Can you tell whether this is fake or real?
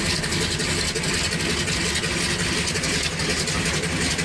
real